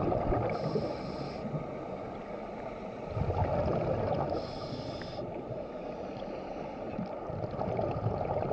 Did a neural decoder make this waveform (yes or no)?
no